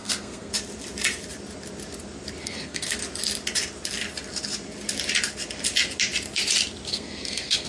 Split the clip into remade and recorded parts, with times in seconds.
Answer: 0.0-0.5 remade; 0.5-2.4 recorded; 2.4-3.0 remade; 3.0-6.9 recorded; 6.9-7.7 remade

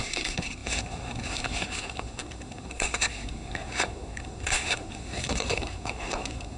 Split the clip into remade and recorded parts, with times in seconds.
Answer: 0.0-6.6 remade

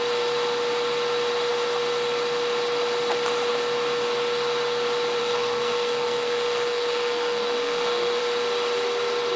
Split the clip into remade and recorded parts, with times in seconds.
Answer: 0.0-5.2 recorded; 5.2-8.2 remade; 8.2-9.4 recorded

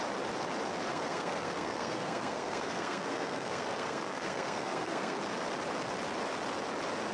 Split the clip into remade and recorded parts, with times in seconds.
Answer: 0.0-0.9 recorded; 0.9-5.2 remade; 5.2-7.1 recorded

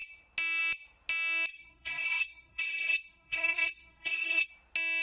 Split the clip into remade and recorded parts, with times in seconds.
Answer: 0.0-1.5 recorded; 1.5-4.5 remade; 4.5-5.0 recorded

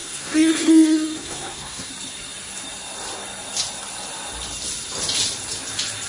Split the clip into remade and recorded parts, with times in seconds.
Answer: 0.0-1.9 remade; 1.9-6.1 recorded

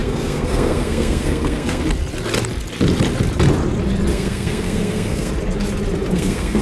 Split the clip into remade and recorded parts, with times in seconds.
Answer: 0.0-1.8 remade; 1.8-4.1 recorded; 4.1-5.3 remade; 5.3-6.1 recorded; 6.1-6.6 remade

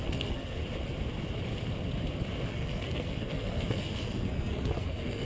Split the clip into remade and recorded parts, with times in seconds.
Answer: 0.0-0.6 remade; 0.6-2.5 recorded; 2.5-5.2 remade